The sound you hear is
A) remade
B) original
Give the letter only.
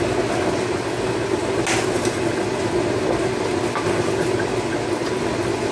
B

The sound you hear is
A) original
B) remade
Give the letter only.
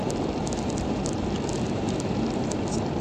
A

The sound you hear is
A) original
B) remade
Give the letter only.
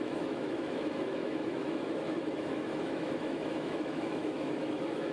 B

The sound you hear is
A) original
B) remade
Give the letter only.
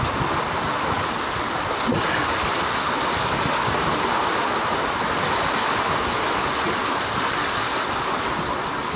A